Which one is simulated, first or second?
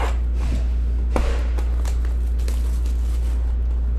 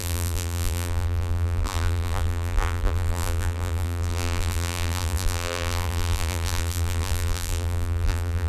second